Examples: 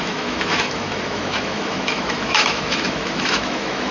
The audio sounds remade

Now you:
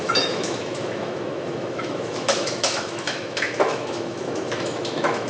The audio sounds remade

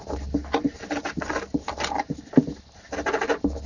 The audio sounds recorded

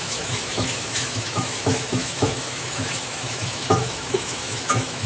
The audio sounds remade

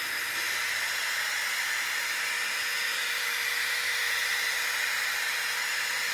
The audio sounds recorded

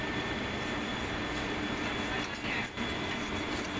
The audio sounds recorded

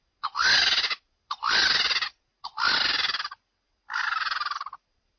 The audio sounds recorded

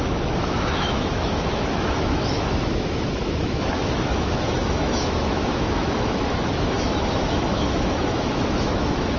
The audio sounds remade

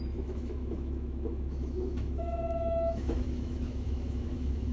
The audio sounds remade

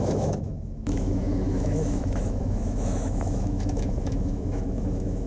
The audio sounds remade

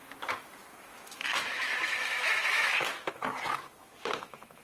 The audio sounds remade